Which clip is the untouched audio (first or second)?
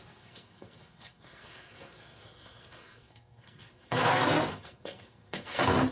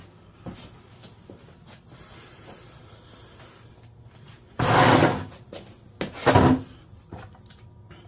second